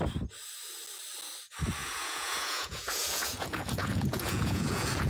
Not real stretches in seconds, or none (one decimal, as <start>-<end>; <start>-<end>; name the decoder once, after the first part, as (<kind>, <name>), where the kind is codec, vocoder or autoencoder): 1.8-5.1 (vocoder, Vocos)